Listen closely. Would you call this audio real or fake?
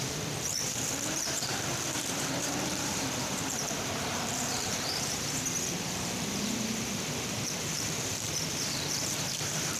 fake